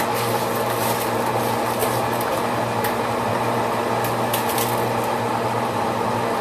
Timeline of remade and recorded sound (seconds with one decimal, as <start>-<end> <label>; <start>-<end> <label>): 0.0-1.8 recorded; 1.8-3.3 remade; 3.3-6.4 recorded